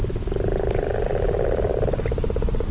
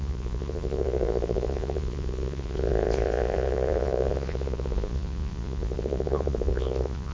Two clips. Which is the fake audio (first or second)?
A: second